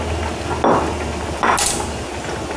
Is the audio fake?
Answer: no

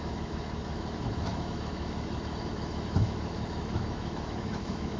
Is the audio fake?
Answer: yes